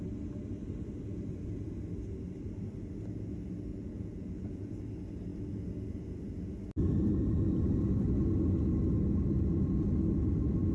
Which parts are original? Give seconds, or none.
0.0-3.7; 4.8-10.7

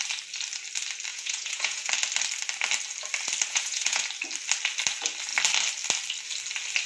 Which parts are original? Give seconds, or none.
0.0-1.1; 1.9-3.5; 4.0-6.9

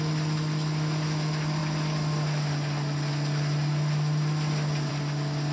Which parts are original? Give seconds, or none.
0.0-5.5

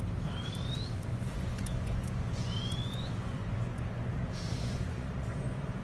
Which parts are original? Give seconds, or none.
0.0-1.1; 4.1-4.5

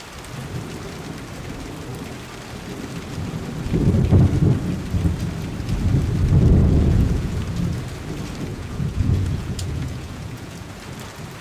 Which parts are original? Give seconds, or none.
0.0-6.6; 7.4-8.5; 10.7-11.4

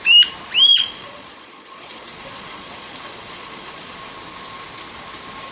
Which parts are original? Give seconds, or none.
0.0-0.7; 4.0-5.5

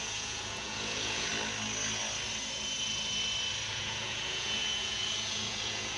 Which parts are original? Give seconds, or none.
1.3-3.7

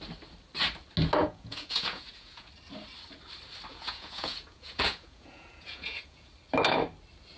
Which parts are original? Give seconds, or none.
0.0-1.2; 2.5-3.7; 6.3-7.4